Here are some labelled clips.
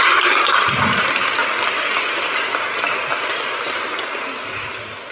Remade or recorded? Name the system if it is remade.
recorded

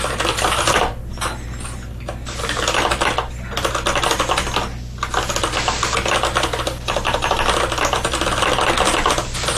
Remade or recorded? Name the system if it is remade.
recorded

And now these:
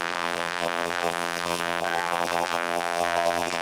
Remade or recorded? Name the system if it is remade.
remade, vocoder, BigVGAN v2